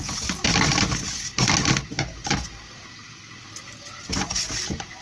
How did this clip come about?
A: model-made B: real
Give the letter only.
B